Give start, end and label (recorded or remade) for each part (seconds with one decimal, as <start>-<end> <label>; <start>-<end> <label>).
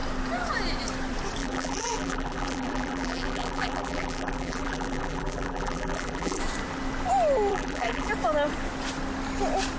0.0-1.4 recorded; 1.4-6.4 remade; 6.4-7.5 recorded; 7.5-8.1 remade; 8.1-9.8 recorded